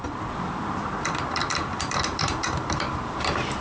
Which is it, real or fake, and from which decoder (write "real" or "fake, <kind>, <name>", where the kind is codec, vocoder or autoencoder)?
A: fake, vocoder, BigVGAN v2